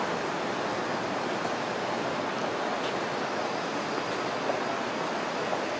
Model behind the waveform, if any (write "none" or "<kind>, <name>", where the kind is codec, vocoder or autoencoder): none